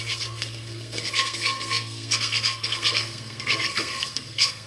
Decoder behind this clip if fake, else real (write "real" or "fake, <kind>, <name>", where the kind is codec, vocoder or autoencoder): fake, codec, SNAC